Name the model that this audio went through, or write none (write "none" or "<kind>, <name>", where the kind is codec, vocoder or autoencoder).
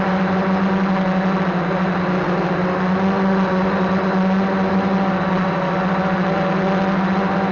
none